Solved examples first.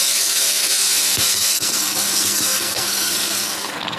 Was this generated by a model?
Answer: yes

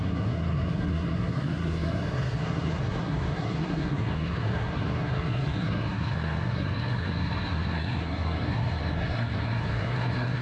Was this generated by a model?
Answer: yes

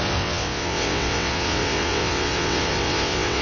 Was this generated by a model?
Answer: yes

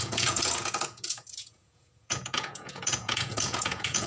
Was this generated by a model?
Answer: yes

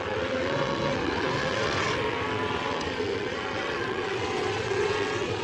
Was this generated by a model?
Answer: yes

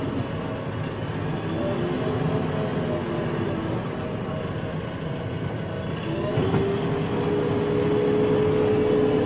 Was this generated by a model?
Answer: no